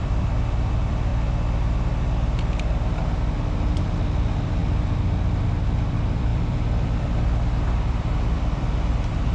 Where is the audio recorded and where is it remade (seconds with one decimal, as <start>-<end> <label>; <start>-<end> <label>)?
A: 0.0-1.1 remade; 1.1-3.8 recorded; 3.8-4.6 remade; 4.6-5.4 recorded; 5.4-9.3 remade